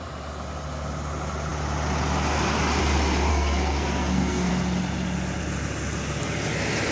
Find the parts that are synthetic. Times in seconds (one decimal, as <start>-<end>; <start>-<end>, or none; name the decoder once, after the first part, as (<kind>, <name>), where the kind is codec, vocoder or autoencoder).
3.3-4.5 (codec, SNAC)